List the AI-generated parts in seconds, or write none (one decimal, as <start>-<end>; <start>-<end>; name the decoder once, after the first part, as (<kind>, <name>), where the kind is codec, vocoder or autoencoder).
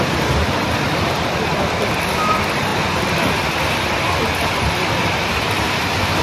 0.0-6.2 (vocoder, BigVGAN v2)